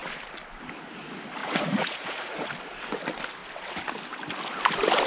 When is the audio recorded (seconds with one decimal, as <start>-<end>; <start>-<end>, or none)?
0.0-1.4; 2.5-5.1